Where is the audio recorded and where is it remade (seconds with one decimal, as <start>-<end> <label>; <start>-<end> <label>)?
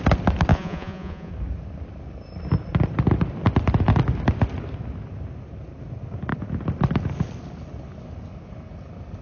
0.0-0.5 recorded; 0.5-1.3 remade; 1.3-9.2 recorded